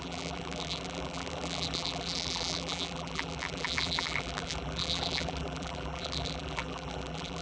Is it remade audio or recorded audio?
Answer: remade